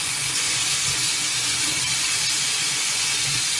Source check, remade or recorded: remade